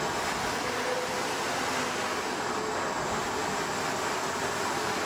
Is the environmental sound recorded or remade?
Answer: recorded